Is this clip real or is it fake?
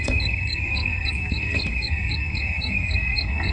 fake